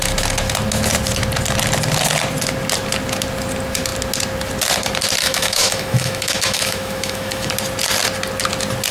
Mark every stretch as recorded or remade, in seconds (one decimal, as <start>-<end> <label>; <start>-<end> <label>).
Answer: 0.0-5.2 recorded; 5.2-7.5 remade; 7.5-8.9 recorded